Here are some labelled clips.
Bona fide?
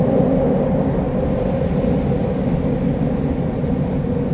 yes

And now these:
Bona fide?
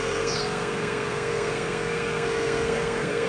no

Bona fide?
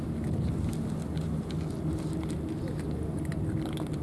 yes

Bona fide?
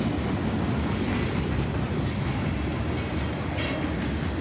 yes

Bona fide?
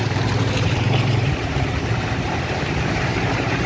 no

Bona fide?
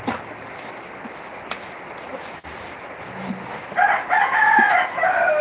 yes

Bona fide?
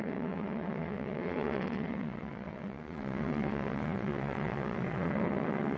no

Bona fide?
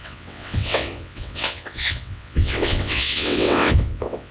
no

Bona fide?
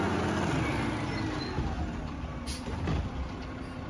yes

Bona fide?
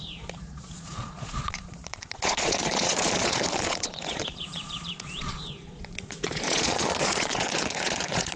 no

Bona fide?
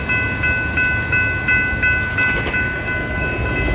yes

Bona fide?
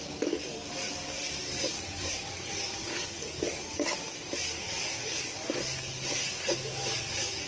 no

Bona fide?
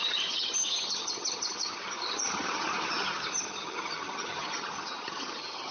no